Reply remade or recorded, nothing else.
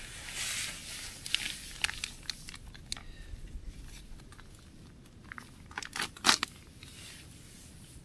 recorded